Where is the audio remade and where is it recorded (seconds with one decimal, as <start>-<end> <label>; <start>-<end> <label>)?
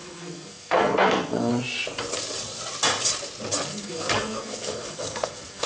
0.0-1.5 remade; 1.5-3.7 recorded; 3.7-5.7 remade